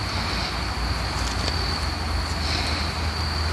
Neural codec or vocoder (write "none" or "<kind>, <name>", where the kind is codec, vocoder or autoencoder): none